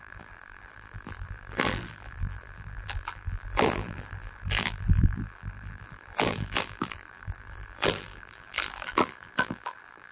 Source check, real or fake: fake